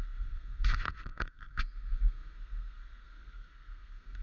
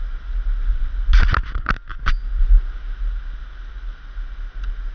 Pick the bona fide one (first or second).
second